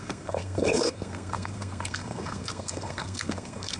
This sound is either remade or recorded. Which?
remade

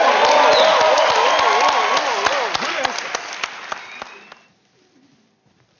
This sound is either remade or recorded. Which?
recorded